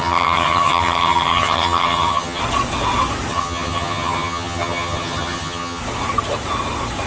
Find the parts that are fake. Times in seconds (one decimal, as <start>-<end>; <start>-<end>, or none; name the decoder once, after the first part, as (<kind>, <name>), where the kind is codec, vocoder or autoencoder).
0.0-2.4 (vocoder, HiFi-GAN); 3.3-5.8